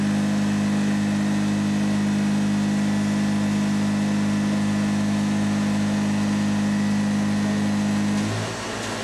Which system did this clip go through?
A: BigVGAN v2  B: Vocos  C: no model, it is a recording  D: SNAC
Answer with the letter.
C